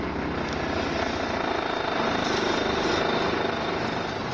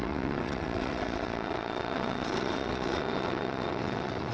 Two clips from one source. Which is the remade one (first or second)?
second